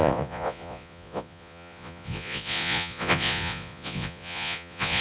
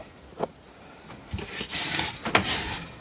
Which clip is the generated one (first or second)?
first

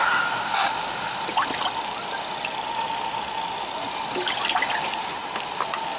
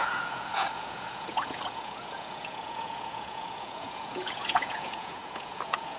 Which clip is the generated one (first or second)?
second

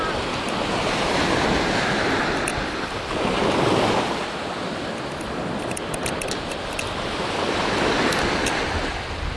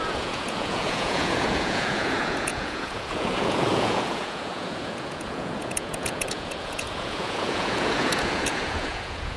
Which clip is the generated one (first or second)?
second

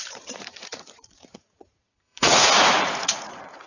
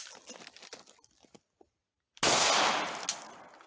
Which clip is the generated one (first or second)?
first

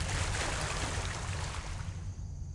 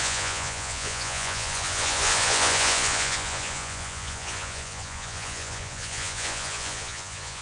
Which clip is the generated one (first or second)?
second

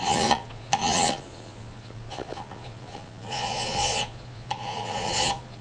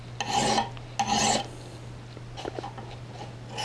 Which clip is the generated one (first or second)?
first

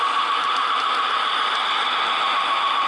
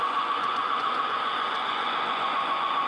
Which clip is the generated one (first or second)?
second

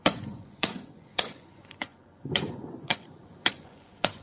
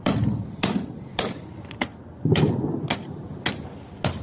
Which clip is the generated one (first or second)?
first